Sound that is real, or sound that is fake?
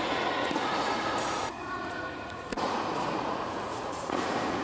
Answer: fake